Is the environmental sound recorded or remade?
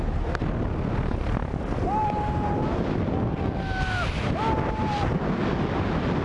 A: recorded